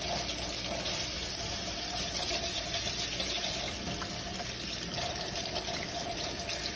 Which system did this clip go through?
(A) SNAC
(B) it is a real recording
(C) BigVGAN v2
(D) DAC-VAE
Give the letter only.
B